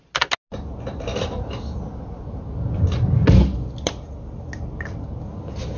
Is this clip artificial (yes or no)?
no